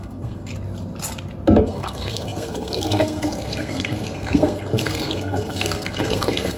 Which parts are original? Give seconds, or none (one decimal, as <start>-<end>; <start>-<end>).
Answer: 0.5-1.6